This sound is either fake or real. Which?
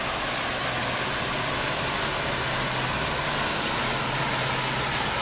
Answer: real